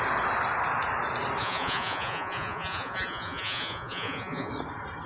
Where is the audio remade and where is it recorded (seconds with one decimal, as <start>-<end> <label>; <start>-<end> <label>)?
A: 0.0-1.4 recorded; 1.4-4.5 remade; 4.5-5.1 recorded